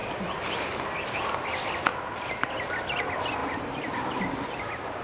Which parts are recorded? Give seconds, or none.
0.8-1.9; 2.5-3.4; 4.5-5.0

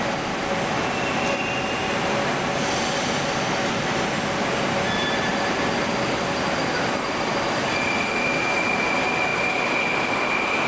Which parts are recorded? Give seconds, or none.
0.0-10.7